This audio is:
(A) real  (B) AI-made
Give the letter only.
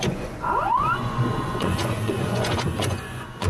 B